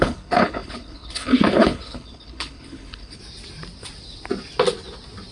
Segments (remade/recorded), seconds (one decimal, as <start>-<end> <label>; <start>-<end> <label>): 0.0-3.2 remade; 3.2-5.3 recorded